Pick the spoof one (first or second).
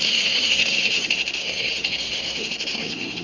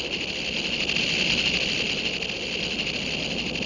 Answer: first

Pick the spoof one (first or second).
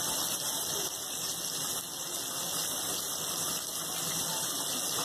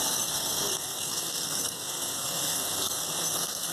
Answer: second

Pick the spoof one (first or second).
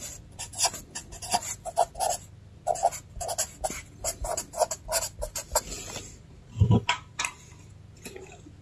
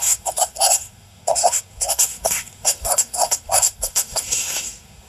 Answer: second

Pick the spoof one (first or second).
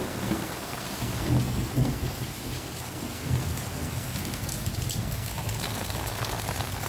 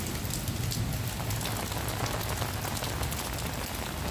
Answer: first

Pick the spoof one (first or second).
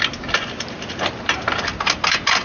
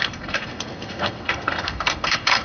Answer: second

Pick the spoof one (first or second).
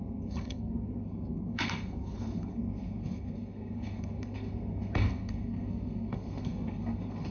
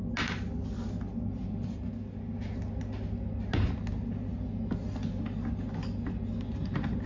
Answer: first